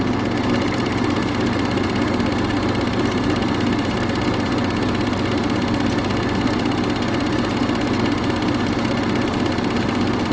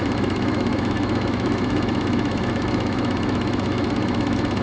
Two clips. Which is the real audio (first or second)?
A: first